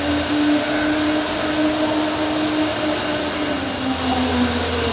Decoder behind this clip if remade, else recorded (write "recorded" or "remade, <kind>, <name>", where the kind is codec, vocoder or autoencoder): recorded